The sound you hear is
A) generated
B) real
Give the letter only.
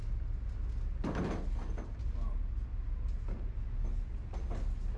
B